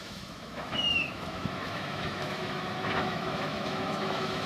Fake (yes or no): yes